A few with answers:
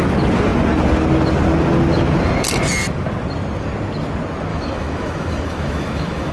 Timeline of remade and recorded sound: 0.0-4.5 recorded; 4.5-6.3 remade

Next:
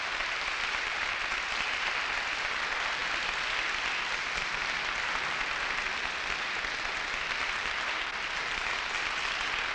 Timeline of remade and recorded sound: 0.0-9.7 recorded

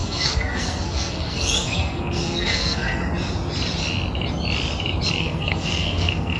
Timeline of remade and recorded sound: 0.0-3.0 remade; 3.0-5.2 recorded; 5.2-6.4 remade

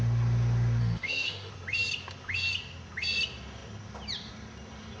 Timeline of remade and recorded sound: 0.0-0.8 recorded; 0.8-1.5 remade; 1.5-5.0 recorded

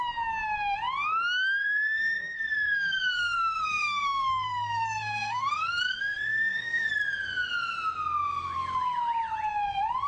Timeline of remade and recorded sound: 0.0-1.6 recorded; 1.6-6.9 remade; 6.9-10.1 recorded

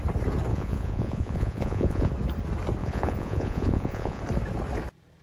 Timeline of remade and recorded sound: 0.0-0.5 recorded; 0.5-2.1 remade; 2.1-2.8 recorded; 2.8-4.2 remade; 4.2-5.2 recorded

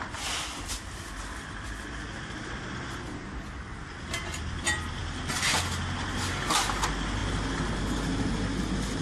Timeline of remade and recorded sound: 0.0-9.0 recorded